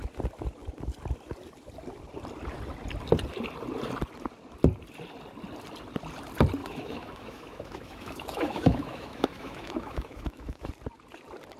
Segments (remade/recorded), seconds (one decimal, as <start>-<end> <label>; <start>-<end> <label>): 0.0-6.6 recorded; 6.6-10.7 remade; 10.7-11.6 recorded